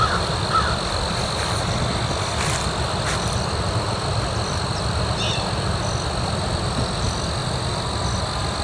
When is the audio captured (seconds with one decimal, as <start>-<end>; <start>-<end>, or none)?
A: 0.0-8.6